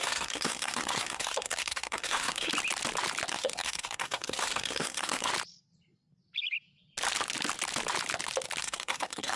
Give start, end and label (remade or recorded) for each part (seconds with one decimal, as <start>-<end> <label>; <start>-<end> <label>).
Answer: 0.0-2.5 remade; 2.5-3.3 recorded; 3.3-5.3 remade; 5.3-8.6 recorded; 8.6-9.4 remade